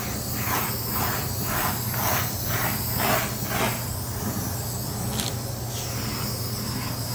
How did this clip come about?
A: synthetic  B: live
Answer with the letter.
B